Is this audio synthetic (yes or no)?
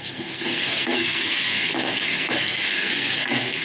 yes